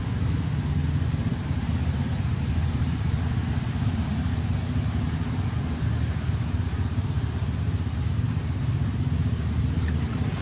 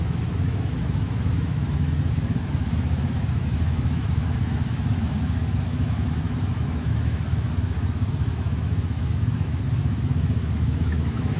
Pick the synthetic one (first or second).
second